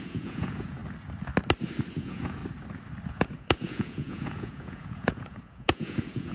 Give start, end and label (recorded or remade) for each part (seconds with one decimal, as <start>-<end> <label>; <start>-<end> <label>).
0.0-0.8 remade; 0.8-1.9 recorded; 1.9-2.4 remade; 2.4-3.1 recorded; 3.1-6.3 remade